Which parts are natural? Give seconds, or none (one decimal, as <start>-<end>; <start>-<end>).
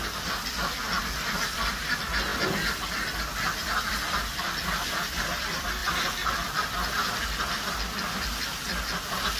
0.0-9.4